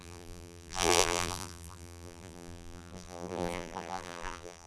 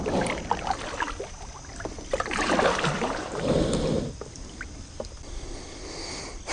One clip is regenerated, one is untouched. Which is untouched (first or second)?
second